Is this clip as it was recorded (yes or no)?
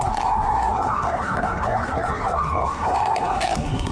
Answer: no